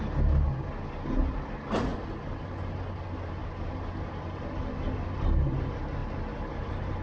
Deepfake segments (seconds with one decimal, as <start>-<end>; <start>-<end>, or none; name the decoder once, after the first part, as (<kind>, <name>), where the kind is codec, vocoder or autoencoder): none